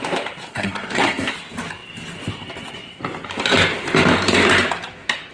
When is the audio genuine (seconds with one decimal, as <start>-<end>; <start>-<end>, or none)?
0.0-0.5; 1.3-5.3